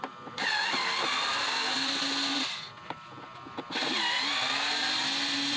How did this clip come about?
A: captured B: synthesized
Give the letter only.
A